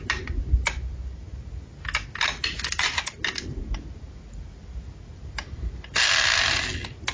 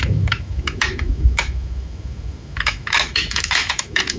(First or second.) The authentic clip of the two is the first